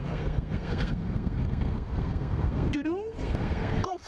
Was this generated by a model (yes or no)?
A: yes